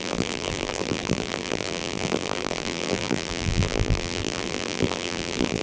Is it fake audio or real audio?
fake